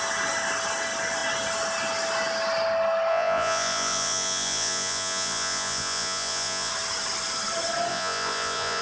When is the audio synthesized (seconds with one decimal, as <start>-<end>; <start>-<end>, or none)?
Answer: 3.1-6.7; 7.9-8.8